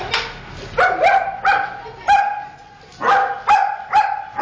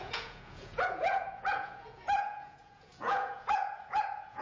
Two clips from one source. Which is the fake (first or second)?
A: second